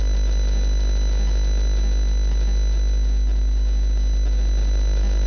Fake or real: real